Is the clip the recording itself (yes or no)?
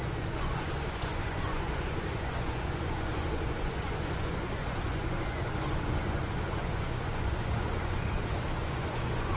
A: no